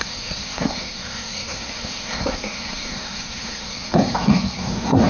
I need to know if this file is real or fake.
fake